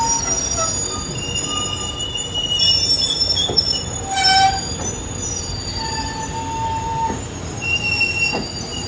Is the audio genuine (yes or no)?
yes